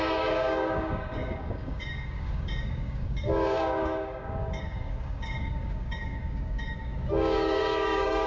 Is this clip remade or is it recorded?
remade